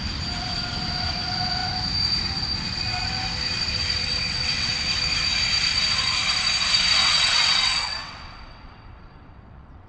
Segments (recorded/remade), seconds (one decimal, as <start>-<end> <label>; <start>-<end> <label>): 0.0-4.0 recorded; 4.0-4.7 remade; 4.7-7.0 recorded; 7.0-9.9 remade